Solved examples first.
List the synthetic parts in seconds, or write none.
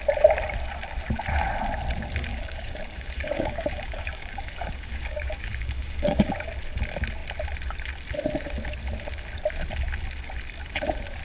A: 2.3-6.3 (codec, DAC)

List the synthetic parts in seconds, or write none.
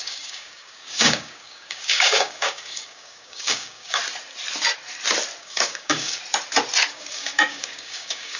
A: 0.0-4.0 (codec, DAC); 5.4-6.2; 6.9-8.4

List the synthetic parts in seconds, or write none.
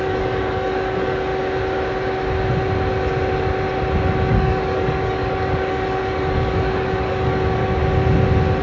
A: 0.0-1.3 (codec, DAC); 4.3-7.8